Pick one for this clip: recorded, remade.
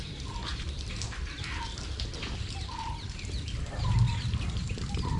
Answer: remade